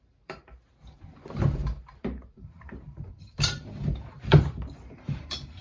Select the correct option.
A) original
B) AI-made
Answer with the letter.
B